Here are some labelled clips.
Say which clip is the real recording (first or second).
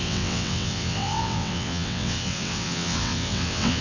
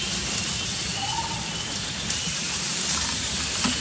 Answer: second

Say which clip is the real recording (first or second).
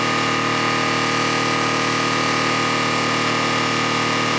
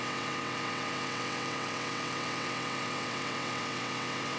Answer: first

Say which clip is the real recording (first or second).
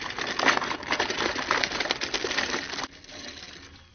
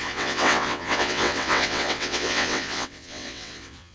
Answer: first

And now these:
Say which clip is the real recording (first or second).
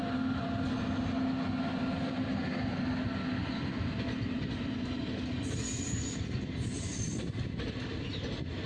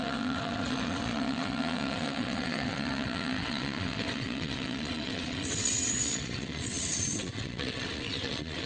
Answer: first